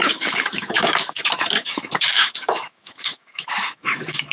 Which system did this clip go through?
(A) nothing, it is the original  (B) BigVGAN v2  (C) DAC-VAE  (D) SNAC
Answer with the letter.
C